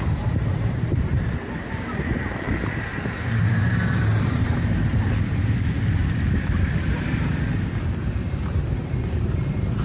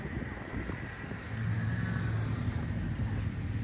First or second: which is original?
second